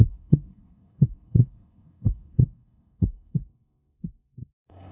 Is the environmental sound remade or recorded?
remade